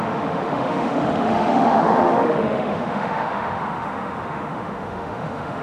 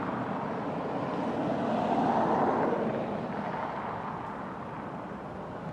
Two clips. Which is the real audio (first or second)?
second